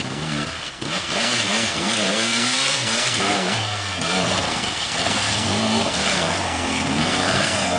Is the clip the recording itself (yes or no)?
no